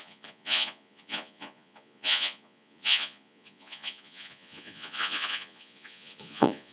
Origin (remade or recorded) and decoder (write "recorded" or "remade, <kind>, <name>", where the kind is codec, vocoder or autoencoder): remade, vocoder, Vocos